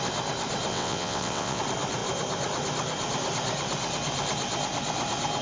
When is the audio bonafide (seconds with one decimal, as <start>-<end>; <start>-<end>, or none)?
0.0-0.7; 1.6-5.4